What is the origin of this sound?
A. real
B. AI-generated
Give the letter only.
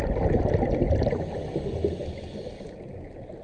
A